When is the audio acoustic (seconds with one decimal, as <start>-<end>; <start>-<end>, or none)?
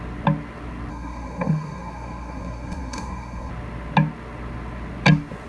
0.0-0.9; 3.5-5.5